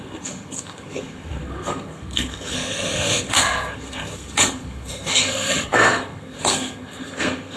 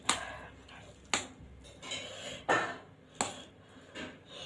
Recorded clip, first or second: second